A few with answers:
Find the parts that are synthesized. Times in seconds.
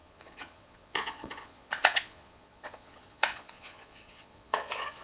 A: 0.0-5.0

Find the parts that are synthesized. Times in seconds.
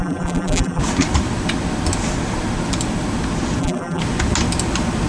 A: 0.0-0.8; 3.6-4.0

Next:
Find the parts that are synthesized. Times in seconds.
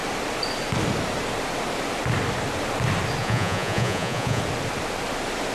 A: 3.2-4.4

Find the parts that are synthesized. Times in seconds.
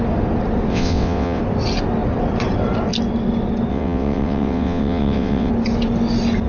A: 0.7-1.4; 3.7-5.5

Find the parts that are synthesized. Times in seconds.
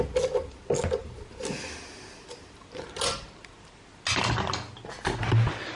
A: none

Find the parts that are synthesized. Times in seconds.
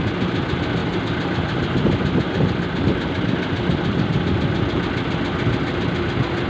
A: none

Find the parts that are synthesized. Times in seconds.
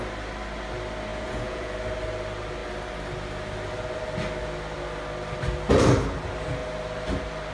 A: 1.1-1.7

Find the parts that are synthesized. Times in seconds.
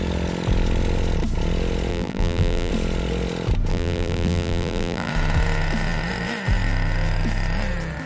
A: 1.9-2.7; 3.7-5.1